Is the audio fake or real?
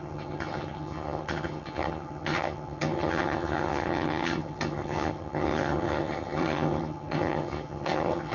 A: fake